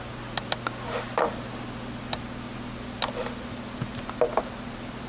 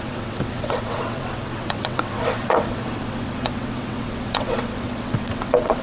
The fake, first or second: second